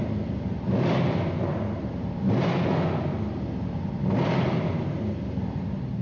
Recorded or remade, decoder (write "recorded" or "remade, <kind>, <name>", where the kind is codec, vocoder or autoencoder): recorded